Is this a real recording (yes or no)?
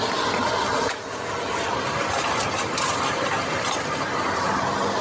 yes